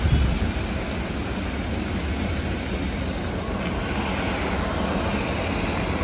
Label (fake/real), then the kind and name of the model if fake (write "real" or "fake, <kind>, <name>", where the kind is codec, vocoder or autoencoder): real